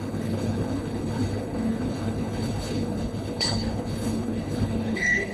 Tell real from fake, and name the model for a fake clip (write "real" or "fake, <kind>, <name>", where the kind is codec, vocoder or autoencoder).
fake, codec, HILCodec